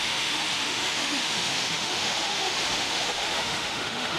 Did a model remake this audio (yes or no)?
yes